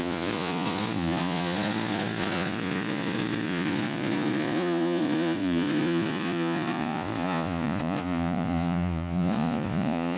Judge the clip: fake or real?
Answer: fake